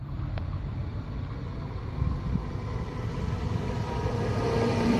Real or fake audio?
real